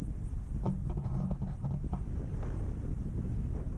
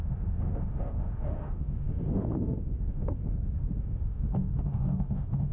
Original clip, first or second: first